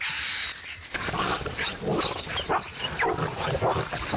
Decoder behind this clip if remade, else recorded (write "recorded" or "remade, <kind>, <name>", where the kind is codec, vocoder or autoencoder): remade, vocoder, BigVGAN v2